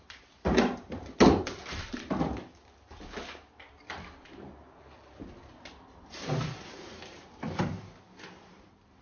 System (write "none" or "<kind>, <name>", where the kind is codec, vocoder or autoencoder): none